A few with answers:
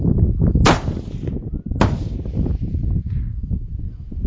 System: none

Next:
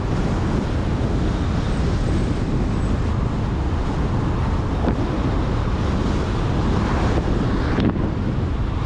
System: none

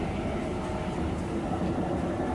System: none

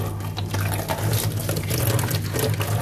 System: none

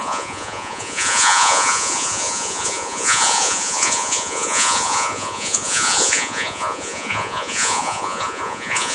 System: vocoder, Vocos